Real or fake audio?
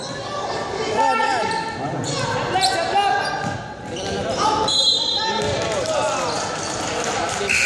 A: real